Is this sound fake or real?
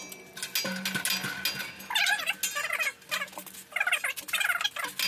real